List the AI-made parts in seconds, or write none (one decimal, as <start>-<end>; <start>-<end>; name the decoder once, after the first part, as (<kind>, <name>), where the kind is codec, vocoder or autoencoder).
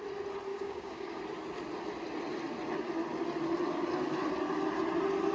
0.5-1.2 (codec, DAC)